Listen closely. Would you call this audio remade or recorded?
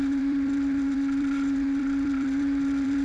remade